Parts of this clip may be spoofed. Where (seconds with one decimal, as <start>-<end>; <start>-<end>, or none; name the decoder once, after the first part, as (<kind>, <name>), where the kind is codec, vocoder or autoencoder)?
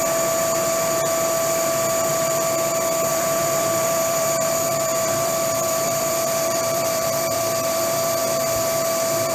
2.1-2.7 (vocoder, BigVGAN v2); 3.1-8.2